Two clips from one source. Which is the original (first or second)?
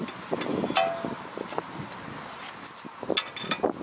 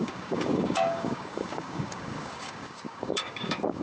first